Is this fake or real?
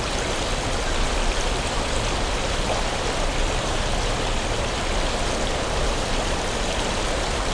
real